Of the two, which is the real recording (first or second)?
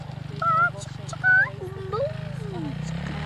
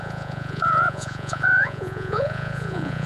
first